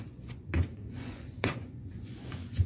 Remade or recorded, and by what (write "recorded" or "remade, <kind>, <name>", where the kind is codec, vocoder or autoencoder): remade, vocoder, Vocos